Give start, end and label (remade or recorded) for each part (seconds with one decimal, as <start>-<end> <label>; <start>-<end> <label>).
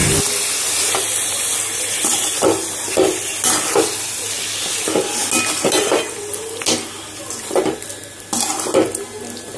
0.0-9.6 recorded